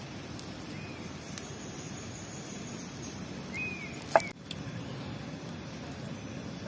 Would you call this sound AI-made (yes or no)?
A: no